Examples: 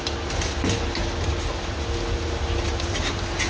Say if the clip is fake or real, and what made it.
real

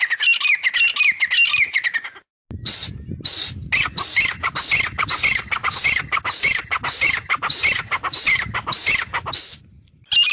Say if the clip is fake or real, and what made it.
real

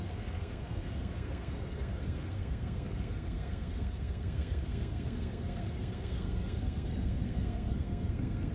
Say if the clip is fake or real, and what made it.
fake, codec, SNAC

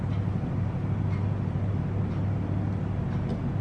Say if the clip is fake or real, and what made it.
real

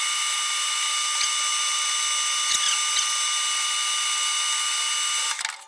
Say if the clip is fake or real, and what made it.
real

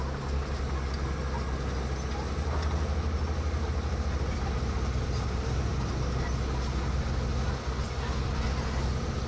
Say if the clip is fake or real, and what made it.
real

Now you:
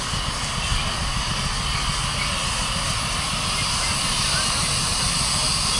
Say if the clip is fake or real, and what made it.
real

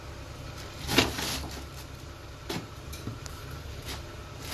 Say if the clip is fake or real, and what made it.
real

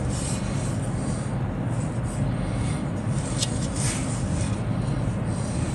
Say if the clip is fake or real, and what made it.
real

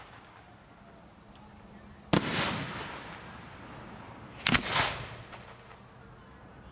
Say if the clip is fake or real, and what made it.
real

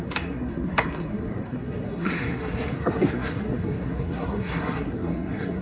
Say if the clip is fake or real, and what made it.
fake, codec, SNAC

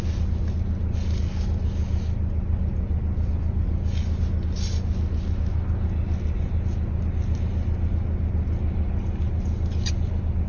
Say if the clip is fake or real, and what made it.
real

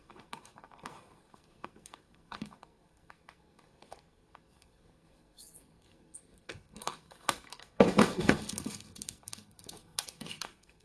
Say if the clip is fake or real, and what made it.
fake, codec, SNAC